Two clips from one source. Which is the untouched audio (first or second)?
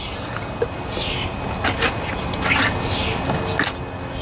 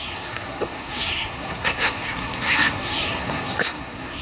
first